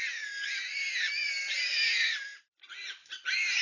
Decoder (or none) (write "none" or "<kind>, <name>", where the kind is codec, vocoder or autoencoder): none